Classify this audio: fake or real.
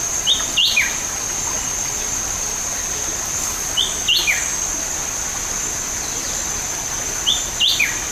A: real